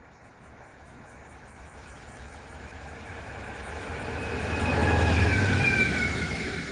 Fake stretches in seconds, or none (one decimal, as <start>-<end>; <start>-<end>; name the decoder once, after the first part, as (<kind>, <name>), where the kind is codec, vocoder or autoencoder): 0.0-6.7 (autoencoder, DAC-VAE)